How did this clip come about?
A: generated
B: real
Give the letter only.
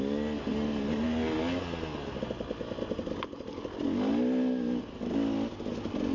B